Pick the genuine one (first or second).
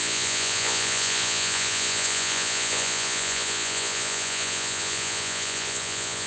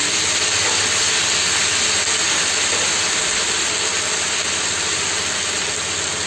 second